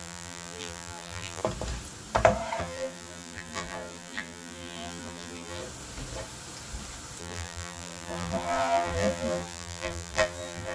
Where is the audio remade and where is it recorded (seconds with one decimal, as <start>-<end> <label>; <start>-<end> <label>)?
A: 0.0-1.4 remade; 1.4-2.6 recorded; 2.6-5.6 remade; 5.6-7.2 recorded; 7.2-10.7 remade